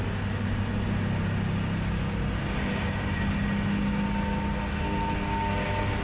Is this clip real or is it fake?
real